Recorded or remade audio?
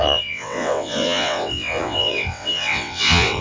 remade